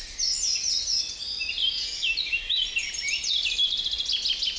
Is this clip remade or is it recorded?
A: recorded